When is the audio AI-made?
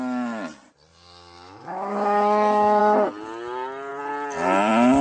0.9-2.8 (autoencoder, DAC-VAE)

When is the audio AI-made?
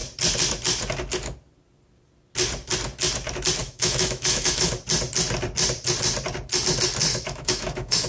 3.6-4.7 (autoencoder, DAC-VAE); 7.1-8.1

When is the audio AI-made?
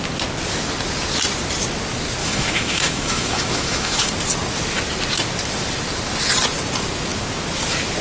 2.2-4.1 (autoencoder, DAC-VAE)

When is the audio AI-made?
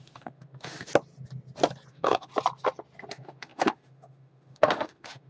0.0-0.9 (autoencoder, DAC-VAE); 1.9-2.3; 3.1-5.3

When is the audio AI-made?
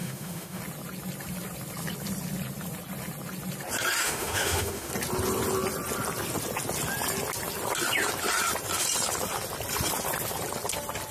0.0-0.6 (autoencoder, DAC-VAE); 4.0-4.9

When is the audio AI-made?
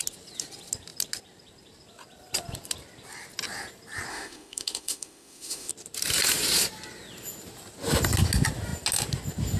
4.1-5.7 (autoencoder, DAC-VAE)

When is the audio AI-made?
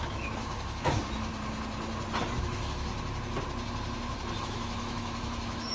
0.0-1.3 (autoencoder, DAC-VAE); 2.4-2.9; 4.4-5.7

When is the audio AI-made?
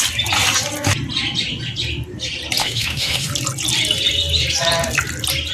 2.6-3.3 (autoencoder, DAC-VAE)